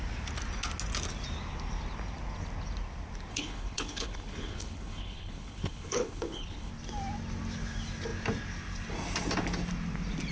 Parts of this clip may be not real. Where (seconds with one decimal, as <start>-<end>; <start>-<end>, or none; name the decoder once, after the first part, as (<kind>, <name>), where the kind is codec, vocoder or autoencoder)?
3.3-6.7 (codec, HILCodec)